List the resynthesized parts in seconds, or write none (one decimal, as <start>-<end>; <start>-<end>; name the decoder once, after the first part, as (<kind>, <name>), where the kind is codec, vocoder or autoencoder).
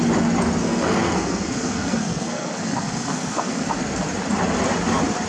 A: 0.6-3.8 (codec, SNAC)